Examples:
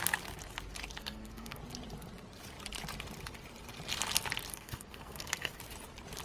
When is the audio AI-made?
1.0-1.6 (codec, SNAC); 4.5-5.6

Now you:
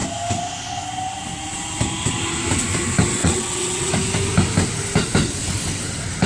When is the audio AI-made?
3.2-3.9 (vocoder, WaveNeXt)

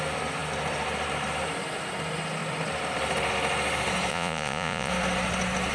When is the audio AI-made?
4.1-4.9 (vocoder, Vocos)

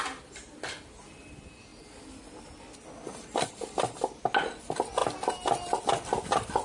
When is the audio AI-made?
none

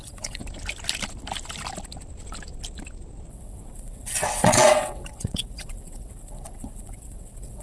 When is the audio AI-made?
0.0-0.4 (vocoder, WaveNeXt); 3.3-7.6

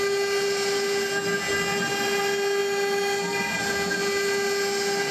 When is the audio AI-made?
none

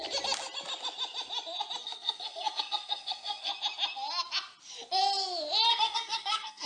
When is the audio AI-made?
1.8-3.5 (codec, SNAC); 5.7-6.7